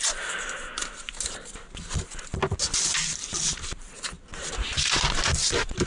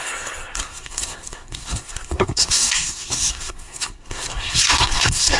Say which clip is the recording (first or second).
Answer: first